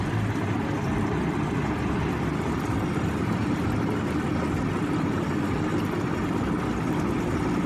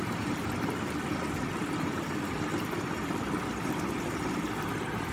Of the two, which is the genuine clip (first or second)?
first